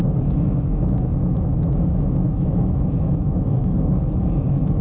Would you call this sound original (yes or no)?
no